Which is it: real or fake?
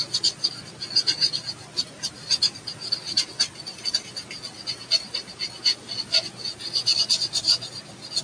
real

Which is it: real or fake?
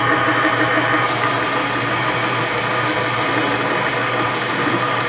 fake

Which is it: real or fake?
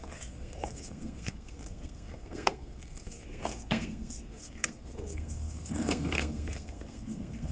fake